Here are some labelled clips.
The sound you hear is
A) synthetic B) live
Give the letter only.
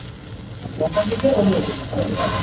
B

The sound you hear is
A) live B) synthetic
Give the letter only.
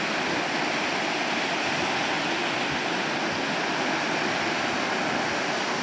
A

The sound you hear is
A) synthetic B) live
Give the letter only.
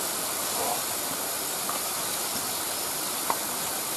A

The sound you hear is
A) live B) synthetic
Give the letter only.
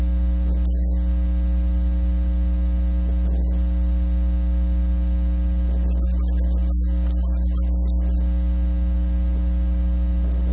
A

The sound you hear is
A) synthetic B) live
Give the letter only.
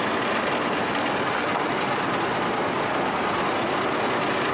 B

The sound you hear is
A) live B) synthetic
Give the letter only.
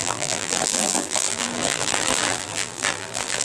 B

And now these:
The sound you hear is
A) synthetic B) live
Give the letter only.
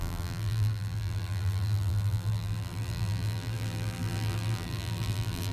A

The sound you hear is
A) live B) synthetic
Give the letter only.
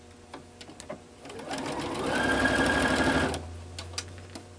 A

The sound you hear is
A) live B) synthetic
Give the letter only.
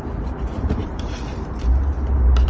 B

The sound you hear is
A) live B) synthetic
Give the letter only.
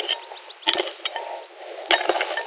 A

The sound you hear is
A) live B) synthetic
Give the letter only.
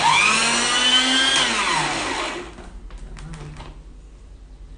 A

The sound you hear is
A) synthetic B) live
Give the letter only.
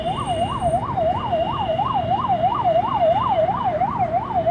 A